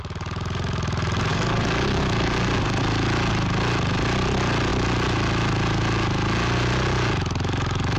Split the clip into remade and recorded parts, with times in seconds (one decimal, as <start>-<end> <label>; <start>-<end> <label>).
0.0-1.3 recorded; 1.3-2.8 remade; 2.8-8.0 recorded